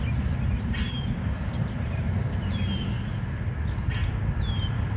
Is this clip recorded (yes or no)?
yes